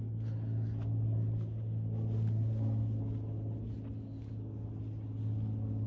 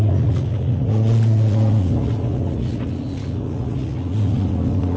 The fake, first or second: second